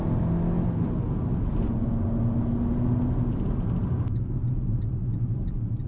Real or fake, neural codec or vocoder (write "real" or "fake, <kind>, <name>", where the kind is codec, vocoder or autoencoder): real